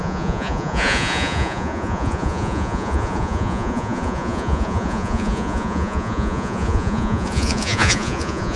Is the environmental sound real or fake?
fake